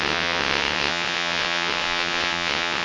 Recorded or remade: remade